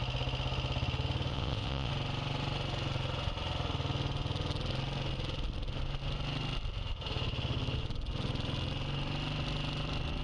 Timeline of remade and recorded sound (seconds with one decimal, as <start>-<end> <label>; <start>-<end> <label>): 0.0-1.3 recorded; 1.3-1.9 remade; 1.9-10.2 recorded